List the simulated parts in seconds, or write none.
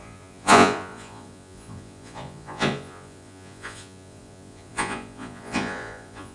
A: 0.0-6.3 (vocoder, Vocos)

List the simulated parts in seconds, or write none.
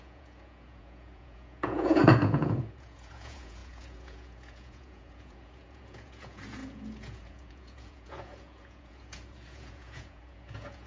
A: 0.0-10.9 (vocoder, Vocos)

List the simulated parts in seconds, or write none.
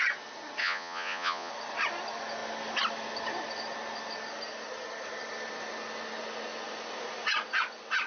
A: 0.6-1.5 (vocoder, Vocos)